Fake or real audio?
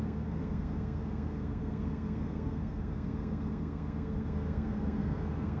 fake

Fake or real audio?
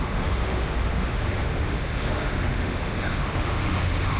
fake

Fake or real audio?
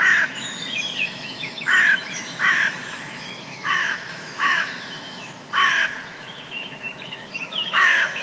fake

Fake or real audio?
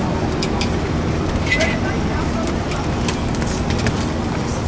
real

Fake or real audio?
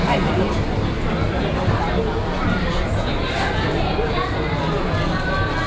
real